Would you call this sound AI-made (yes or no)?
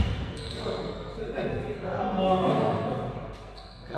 yes